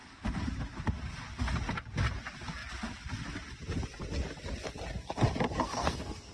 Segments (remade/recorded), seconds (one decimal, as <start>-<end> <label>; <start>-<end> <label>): 0.0-5.5 recorded; 5.5-6.3 remade